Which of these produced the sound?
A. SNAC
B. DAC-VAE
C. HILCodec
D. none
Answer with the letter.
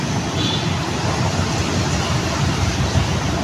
D